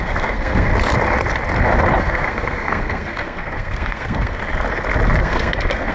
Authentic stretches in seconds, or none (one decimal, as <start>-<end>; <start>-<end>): 0.7-2.0; 4.4-5.2